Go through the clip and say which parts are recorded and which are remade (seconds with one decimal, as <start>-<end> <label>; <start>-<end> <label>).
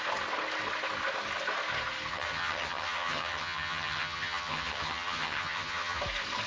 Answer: 0.0-2.1 recorded; 2.1-6.0 remade; 6.0-6.5 recorded